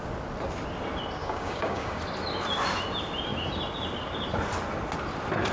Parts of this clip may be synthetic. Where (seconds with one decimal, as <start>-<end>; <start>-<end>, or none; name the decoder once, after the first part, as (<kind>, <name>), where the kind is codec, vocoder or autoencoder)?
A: 1.2-2.0 (codec, DAC)

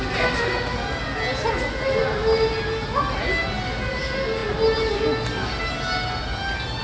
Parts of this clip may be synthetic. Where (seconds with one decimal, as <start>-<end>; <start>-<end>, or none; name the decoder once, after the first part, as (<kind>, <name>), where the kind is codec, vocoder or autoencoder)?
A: none

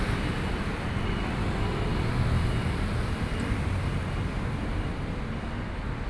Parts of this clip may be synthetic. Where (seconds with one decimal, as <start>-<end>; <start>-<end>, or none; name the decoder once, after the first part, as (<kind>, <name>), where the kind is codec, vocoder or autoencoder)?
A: none

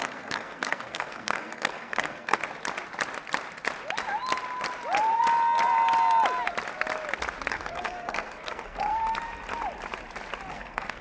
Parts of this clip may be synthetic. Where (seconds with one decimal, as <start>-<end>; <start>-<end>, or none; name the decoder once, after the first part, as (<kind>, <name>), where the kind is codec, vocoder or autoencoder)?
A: 0.0-2.4 (codec, SNAC); 7.5-9.0; 10.5-11.0

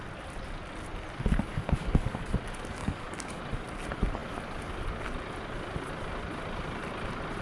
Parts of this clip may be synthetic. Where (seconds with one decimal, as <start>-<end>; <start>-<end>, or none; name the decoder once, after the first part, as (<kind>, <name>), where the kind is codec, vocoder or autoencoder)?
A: 1.5-2.3 (codec, DAC); 2.8-3.4

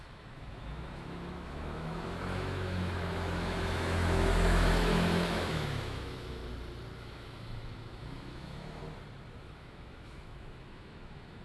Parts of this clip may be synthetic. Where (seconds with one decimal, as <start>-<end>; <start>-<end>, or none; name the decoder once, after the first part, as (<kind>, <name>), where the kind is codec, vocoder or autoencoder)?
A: 0.0-6.4 (autoencoder, DAC-VAE); 7.0-8.8; 9.4-11.4